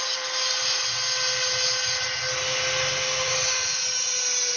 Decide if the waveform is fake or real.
real